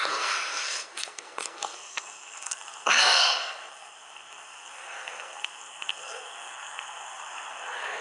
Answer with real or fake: fake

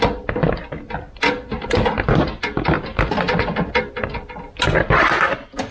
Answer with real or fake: real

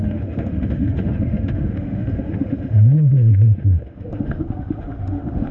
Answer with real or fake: fake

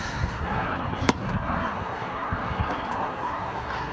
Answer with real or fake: fake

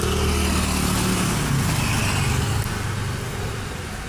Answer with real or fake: real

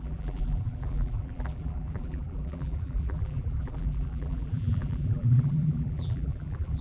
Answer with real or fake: fake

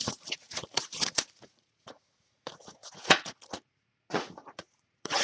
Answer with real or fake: fake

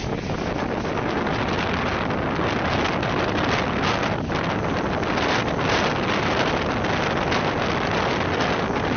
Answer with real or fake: real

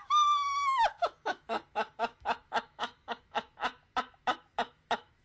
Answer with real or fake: fake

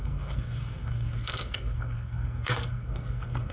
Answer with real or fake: fake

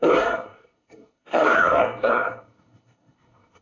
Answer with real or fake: fake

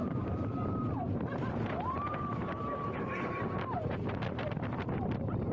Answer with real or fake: fake